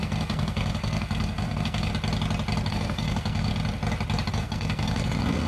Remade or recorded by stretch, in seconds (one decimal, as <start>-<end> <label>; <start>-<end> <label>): 0.0-1.9 remade; 1.9-2.7 recorded; 2.7-3.5 remade; 3.5-4.3 recorded; 4.3-5.5 remade